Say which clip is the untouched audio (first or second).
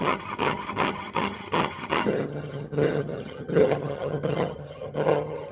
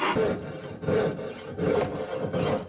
second